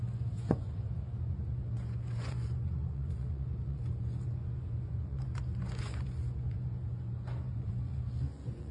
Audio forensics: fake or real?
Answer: fake